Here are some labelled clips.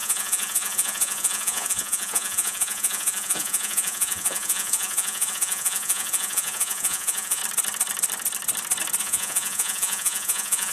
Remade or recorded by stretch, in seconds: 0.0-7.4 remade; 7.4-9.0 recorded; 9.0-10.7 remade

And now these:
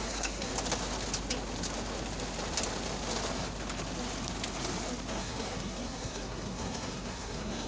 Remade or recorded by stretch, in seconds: 0.0-0.5 remade; 0.5-5.1 recorded; 5.1-7.7 remade

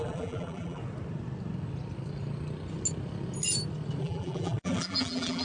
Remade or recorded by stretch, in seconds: 0.0-0.8 remade; 0.8-4.0 recorded; 4.0-5.4 remade

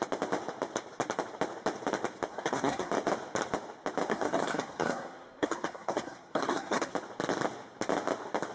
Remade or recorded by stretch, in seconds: 0.0-2.3 recorded; 2.3-2.9 remade; 2.9-4.1 recorded; 4.1-6.9 remade; 6.9-8.5 recorded

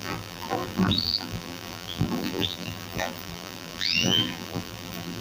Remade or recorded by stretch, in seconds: 0.0-5.2 remade